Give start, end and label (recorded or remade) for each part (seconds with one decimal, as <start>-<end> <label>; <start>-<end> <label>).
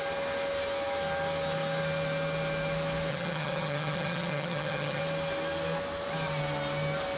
0.0-3.1 recorded; 3.1-5.0 remade; 5.0-7.2 recorded